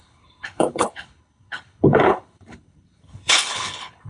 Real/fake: fake